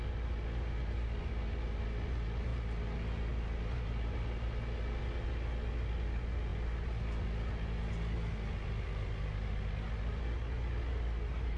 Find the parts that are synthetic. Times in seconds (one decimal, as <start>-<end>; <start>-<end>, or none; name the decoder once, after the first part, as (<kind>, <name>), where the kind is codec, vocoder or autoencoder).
none